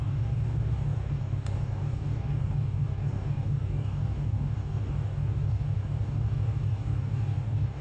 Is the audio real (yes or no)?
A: no